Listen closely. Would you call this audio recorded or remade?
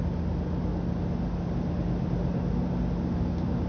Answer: recorded